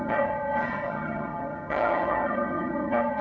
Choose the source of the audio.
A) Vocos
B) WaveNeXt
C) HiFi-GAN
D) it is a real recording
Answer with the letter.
C